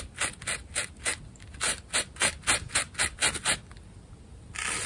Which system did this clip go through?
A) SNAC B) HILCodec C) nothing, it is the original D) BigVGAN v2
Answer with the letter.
C